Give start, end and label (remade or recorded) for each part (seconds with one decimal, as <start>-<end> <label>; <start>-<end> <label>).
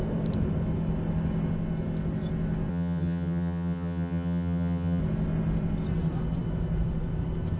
0.0-2.7 recorded; 2.7-5.0 remade; 5.0-7.6 recorded